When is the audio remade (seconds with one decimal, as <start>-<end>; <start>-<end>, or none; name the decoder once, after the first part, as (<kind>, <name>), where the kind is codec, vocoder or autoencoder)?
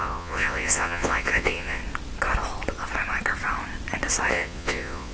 0.0-1.8 (vocoder, Vocos); 4.3-5.1